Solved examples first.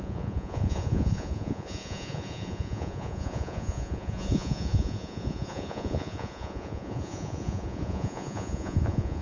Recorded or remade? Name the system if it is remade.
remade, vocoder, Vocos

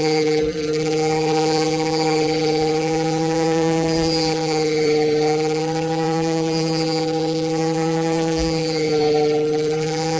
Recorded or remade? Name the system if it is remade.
remade, vocoder, BigVGAN v2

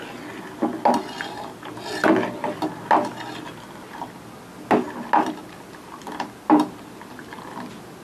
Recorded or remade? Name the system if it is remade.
recorded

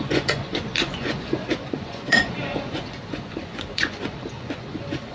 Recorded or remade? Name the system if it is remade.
remade, vocoder, Vocos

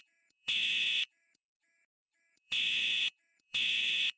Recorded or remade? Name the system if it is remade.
remade, autoencoder, DAC-VAE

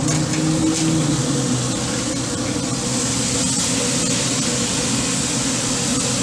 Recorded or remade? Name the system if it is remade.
recorded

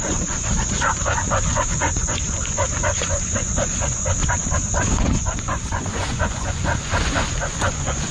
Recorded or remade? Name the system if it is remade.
remade, vocoder, Vocos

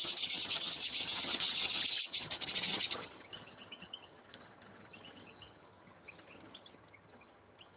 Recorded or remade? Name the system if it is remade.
remade, vocoder, HiFi-GAN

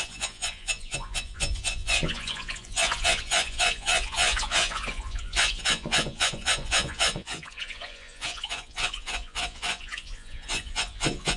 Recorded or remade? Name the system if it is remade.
remade, vocoder, Vocos